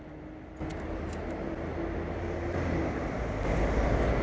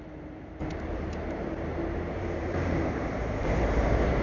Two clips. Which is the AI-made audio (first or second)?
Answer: second